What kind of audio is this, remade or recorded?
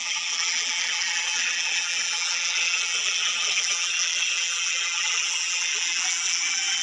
remade